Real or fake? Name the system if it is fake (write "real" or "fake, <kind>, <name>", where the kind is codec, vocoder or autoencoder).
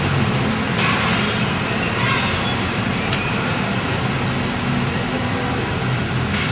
real